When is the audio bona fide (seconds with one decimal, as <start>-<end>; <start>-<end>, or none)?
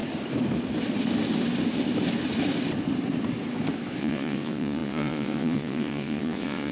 0.0-4.0